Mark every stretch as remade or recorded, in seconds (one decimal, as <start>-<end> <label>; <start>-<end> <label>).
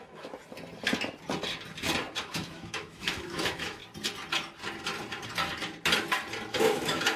0.0-0.4 remade; 0.4-2.2 recorded; 2.2-3.8 remade; 3.8-6.6 recorded; 6.6-7.2 remade